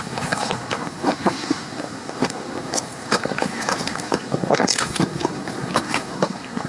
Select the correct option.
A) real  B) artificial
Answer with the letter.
B